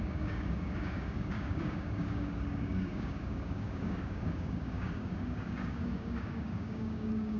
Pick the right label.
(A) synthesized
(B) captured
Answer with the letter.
A